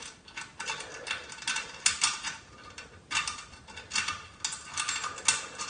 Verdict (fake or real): real